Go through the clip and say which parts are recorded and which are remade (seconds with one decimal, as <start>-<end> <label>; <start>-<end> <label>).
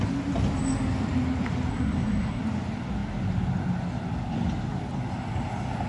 0.0-1.7 recorded; 1.7-2.4 remade; 2.4-5.9 recorded